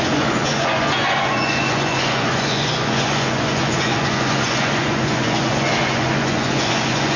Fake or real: fake